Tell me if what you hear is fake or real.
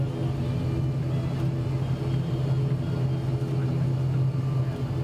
real